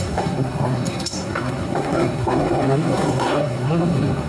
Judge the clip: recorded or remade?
remade